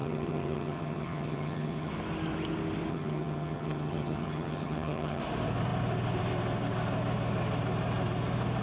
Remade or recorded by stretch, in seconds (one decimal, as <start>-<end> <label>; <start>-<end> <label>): 0.0-1.9 remade; 1.9-2.9 recorded; 2.9-5.2 remade; 5.2-8.6 recorded